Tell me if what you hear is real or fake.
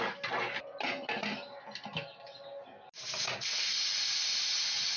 real